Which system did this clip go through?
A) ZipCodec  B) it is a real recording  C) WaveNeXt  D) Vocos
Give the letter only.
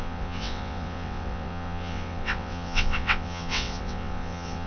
C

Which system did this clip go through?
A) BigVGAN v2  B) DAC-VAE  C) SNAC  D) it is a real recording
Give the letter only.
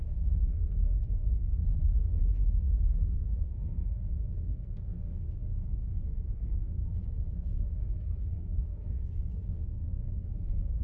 C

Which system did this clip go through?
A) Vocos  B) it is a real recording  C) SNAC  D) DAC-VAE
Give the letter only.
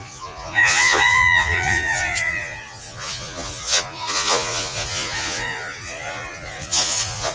A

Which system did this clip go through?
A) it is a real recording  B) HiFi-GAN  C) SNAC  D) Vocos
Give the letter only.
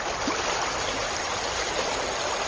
A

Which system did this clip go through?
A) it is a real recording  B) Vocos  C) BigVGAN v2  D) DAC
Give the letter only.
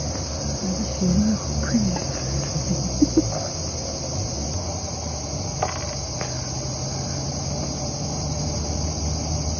A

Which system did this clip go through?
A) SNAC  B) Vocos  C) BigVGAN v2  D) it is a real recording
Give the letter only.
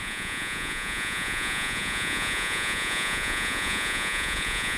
B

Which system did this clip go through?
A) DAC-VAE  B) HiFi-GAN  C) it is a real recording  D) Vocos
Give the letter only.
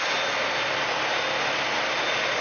C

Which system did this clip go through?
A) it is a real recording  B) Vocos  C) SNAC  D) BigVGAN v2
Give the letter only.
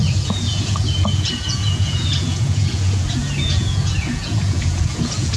B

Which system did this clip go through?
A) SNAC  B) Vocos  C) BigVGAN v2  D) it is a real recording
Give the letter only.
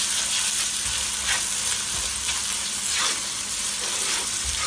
D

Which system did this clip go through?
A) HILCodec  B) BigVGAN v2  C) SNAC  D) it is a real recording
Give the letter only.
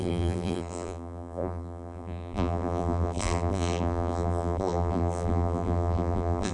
B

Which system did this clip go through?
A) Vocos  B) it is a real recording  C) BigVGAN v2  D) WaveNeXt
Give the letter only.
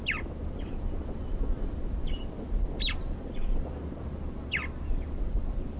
B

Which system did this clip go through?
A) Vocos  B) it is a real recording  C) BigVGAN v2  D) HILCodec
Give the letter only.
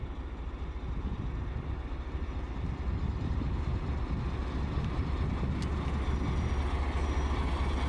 B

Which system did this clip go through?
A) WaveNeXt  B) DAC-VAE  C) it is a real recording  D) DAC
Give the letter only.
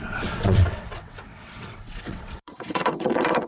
A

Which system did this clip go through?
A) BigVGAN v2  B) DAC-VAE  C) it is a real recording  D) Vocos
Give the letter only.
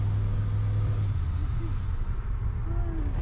C